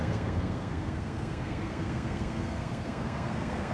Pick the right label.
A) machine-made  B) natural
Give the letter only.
A